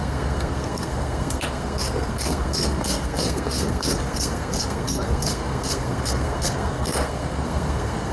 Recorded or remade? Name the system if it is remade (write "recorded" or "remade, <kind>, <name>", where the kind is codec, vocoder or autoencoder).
remade, codec, SNAC